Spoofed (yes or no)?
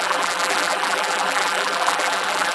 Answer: yes